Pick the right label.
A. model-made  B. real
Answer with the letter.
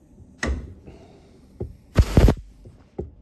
A